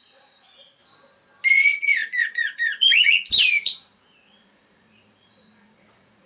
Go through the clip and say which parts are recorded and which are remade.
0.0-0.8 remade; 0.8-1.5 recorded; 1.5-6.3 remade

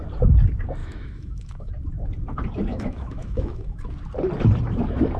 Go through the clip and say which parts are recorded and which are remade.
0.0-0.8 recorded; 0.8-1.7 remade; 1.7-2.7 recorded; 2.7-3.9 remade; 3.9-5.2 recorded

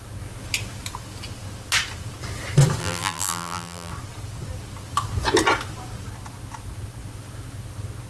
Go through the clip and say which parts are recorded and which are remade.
0.0-2.8 recorded; 2.8-3.9 remade; 3.9-8.1 recorded

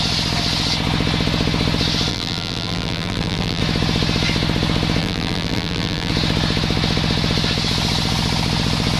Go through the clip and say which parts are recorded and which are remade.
0.0-2.1 recorded; 2.1-3.6 remade; 3.6-5.0 recorded; 5.0-6.1 remade; 6.1-9.0 recorded

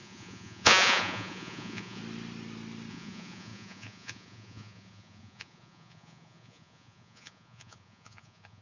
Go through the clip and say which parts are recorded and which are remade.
0.0-2.0 remade; 2.0-2.9 recorded; 2.9-8.6 remade

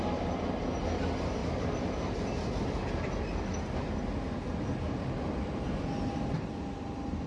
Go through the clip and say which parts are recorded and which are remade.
0.0-7.3 recorded